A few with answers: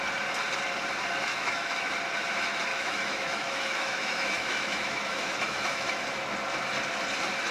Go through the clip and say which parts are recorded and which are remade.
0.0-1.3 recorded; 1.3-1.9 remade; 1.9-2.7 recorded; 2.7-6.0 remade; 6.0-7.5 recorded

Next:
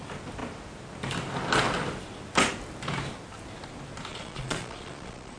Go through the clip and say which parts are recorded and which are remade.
0.0-4.1 recorded; 4.1-5.4 remade

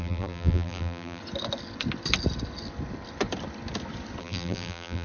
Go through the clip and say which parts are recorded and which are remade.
0.0-1.2 remade; 1.2-4.2 recorded; 4.2-5.0 remade

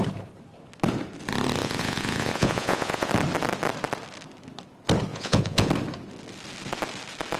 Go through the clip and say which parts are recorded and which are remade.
0.0-1.6 recorded; 1.6-3.1 remade; 3.1-5.1 recorded; 5.1-5.7 remade; 5.7-7.4 recorded

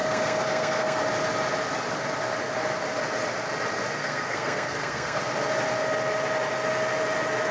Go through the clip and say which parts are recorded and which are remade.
0.0-1.0 remade; 1.0-4.0 recorded; 4.0-5.2 remade; 5.2-7.5 recorded